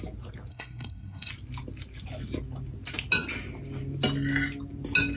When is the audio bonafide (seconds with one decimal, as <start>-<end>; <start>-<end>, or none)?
0.0-0.5; 1.3-5.2